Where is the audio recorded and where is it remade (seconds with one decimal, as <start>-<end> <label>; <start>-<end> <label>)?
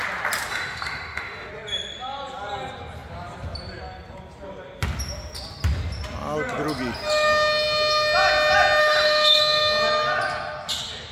0.0-0.5 recorded; 0.5-1.5 remade; 1.5-8.8 recorded; 8.8-9.4 remade; 9.4-11.1 recorded